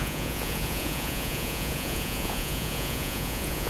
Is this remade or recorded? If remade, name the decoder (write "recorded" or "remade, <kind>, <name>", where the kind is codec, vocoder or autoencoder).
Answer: remade, vocoder, Vocos